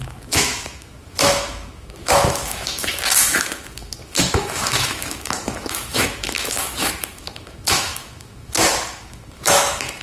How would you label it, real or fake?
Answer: fake